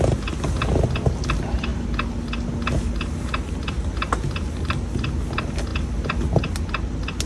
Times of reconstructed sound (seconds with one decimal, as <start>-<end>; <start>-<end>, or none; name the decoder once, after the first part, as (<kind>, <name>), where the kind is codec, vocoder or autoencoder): none